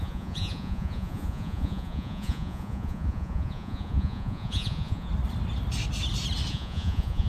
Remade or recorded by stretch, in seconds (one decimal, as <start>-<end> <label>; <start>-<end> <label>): 0.0-5.1 remade; 5.1-6.5 recorded; 6.5-7.3 remade